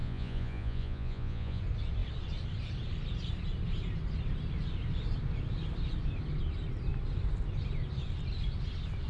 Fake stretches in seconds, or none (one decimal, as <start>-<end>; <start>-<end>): 0.0-1.6